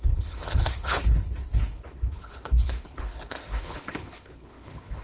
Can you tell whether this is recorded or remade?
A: remade